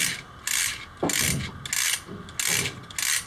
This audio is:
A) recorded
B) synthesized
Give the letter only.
A